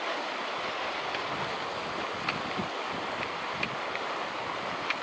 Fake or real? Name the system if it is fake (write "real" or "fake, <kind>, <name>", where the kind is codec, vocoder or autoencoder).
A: real